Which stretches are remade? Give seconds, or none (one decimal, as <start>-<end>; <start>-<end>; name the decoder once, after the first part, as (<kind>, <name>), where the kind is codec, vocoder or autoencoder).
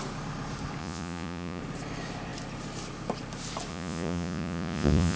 0.8-1.6 (vocoder, Vocos); 3.7-5.2